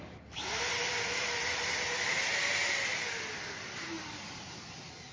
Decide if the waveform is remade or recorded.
remade